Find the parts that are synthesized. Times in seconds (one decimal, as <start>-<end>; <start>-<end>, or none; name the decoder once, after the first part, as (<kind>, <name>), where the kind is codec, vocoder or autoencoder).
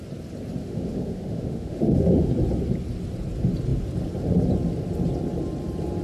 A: 0.6-2.3 (autoencoder, DAC-VAE)